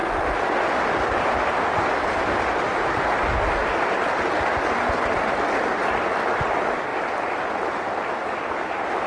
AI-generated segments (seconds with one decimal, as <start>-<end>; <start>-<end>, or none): none